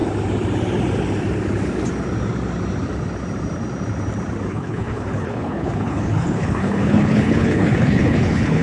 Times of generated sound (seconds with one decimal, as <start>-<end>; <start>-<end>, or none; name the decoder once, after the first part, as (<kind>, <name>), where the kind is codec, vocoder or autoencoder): 4.5-8.6 (codec, HILCodec)